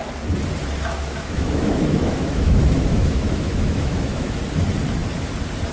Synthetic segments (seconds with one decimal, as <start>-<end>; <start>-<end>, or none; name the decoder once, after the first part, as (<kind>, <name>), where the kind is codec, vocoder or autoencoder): 1.0-4.4 (autoencoder, DAC-VAE)